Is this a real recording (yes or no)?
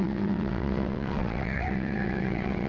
no